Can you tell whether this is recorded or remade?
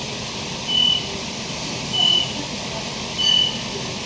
recorded